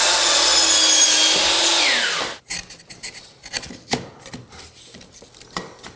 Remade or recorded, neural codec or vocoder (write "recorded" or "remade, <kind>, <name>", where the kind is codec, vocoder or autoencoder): recorded